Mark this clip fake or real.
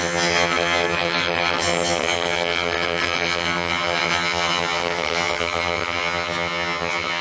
fake